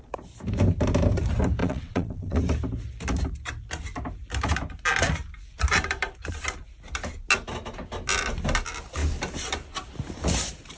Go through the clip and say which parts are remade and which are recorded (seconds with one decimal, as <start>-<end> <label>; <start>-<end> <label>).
0.0-1.6 recorded; 1.6-2.4 remade; 2.4-10.8 recorded